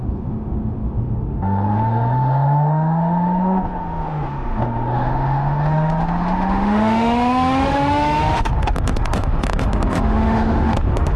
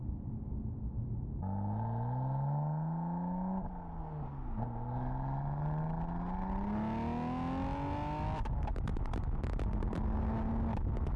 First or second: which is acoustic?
second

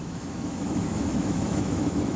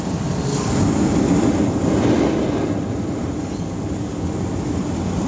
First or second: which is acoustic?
second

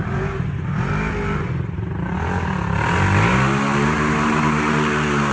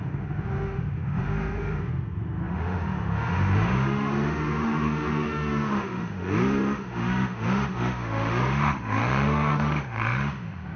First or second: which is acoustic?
first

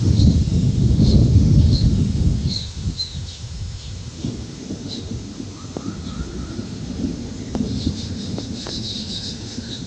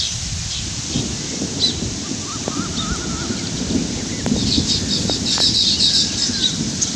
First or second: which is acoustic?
second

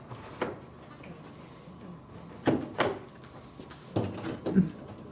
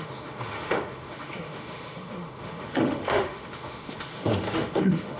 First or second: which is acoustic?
first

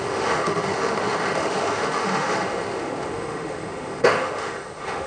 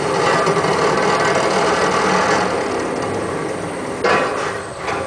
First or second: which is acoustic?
second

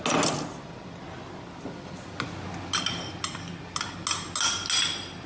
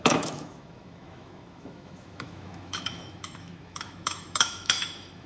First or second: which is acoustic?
first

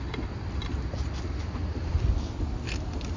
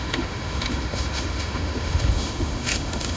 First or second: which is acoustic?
first